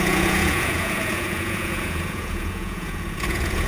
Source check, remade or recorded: remade